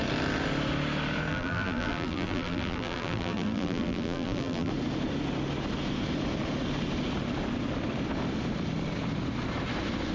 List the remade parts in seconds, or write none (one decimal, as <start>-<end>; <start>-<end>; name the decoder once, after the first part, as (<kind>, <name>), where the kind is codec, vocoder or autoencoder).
1.3-4.7 (vocoder, BigVGAN v2)